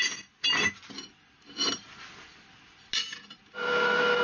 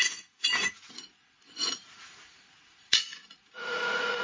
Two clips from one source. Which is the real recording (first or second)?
first